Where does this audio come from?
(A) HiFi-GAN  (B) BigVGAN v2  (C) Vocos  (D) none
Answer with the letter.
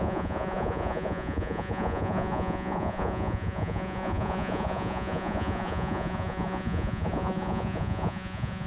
C